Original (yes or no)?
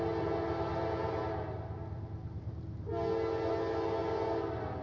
yes